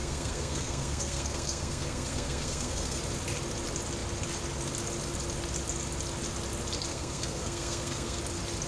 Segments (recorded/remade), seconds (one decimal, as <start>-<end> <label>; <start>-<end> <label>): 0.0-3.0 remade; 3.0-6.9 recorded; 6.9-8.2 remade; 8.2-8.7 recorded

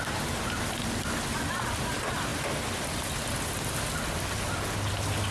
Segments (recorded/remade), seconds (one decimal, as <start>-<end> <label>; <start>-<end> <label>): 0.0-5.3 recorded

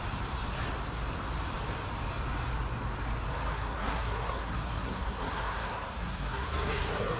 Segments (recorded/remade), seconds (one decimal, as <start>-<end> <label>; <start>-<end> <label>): 0.0-3.5 recorded; 3.5-7.2 remade